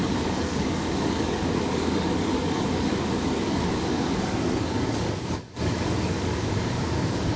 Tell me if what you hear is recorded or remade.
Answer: remade